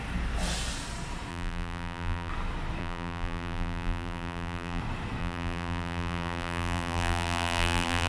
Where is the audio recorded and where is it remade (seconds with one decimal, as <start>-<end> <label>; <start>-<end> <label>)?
0.0-1.3 recorded; 1.3-2.3 remade; 2.3-2.8 recorded; 2.8-4.8 remade; 4.8-5.2 recorded; 5.2-8.1 remade